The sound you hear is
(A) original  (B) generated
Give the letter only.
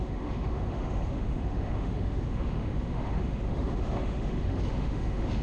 B